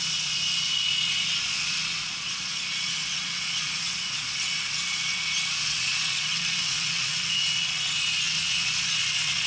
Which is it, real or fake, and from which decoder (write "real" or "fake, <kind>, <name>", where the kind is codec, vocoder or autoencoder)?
fake, vocoder, Vocos